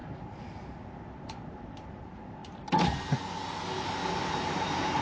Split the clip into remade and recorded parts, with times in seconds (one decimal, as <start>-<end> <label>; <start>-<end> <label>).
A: 0.0-2.4 remade; 2.4-4.5 recorded; 4.5-5.0 remade